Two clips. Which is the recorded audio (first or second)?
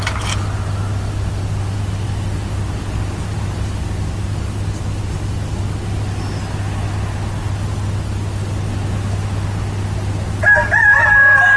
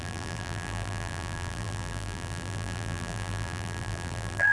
first